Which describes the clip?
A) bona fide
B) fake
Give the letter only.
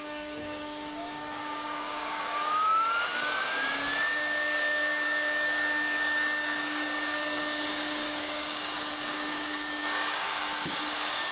B